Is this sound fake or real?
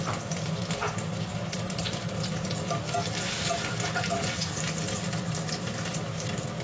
real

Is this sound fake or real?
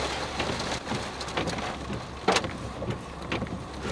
real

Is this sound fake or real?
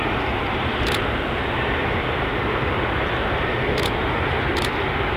fake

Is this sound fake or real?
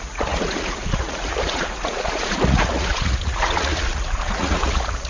fake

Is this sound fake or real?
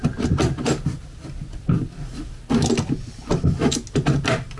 real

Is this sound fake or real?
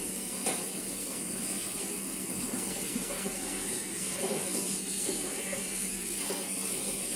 fake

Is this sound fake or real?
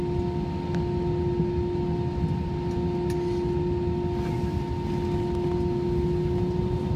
real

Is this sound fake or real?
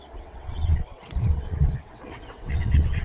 fake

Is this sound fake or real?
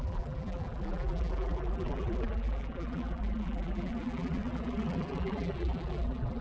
fake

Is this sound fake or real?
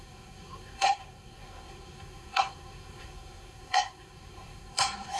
fake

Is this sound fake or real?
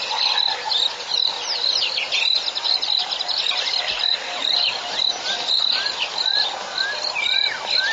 real